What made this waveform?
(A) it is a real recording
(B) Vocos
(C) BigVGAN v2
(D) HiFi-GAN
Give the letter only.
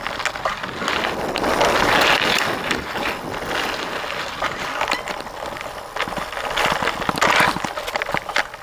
A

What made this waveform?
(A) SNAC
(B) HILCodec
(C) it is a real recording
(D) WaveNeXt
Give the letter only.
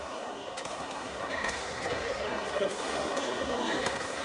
A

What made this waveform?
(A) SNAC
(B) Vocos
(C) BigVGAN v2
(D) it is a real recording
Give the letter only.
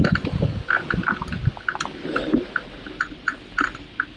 D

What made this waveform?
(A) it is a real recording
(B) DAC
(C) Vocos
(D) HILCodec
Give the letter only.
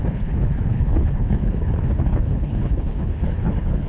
D